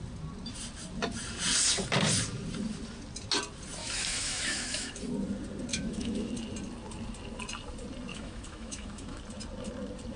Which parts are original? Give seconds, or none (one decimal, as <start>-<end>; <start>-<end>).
0.0-3.8; 5.0-5.7; 6.3-8.1; 9.2-10.2